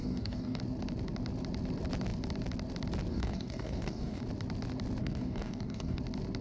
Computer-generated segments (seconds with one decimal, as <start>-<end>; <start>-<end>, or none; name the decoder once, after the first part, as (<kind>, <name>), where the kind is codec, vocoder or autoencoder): 0.0-0.6 (codec, DAC); 3.1-4.2; 5.0-6.0